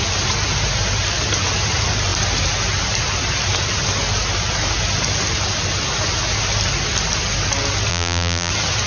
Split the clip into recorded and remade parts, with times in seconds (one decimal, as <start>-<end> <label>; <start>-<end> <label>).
0.0-7.9 recorded; 7.9-8.5 remade; 8.5-8.9 recorded